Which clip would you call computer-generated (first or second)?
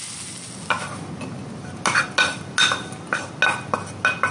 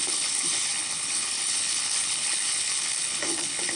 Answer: second